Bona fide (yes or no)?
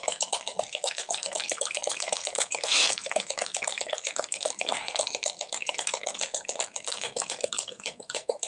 no